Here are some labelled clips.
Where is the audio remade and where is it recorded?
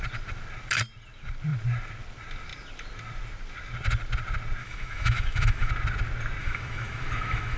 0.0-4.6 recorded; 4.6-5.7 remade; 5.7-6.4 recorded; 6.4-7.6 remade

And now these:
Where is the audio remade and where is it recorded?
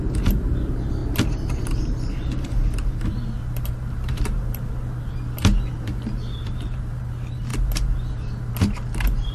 0.0-9.3 remade